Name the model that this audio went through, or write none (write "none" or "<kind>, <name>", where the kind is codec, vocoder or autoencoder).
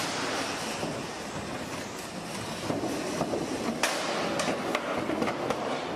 none